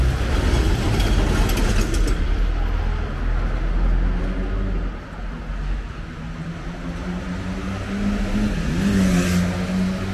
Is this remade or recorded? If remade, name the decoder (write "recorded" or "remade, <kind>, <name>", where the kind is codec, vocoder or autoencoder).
recorded